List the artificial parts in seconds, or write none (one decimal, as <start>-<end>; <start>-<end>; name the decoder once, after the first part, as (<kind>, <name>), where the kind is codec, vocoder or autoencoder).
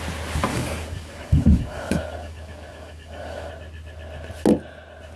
0.5-3.5 (codec, DAC)